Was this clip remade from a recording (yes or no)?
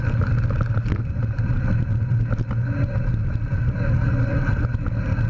no